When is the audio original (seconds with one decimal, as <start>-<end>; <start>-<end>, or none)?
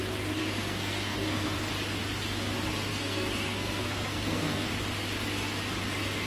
0.0-0.4; 1.7-2.9; 4.7-6.3